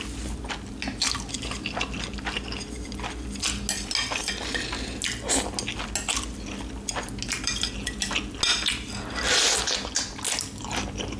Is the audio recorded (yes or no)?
yes